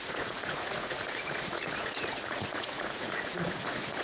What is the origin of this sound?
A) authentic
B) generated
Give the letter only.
B